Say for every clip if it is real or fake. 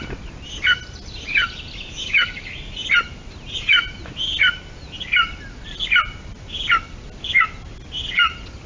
real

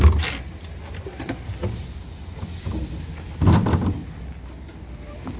real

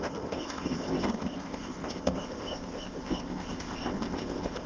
fake